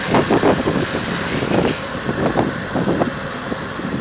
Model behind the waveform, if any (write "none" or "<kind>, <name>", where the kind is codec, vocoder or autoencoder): vocoder, BigVGAN v2